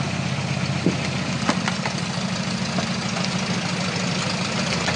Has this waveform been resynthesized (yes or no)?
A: no